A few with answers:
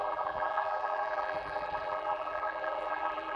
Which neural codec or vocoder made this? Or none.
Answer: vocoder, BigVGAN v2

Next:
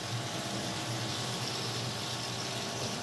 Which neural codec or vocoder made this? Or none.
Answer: vocoder, BigVGAN v2